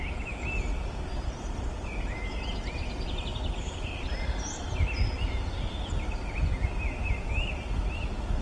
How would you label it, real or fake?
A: real